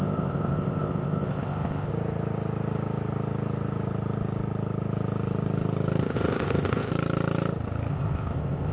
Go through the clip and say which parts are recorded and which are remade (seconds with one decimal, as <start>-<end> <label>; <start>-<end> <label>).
0.0-1.9 remade; 1.9-6.0 recorded; 6.0-6.9 remade; 6.9-7.9 recorded; 7.9-8.7 remade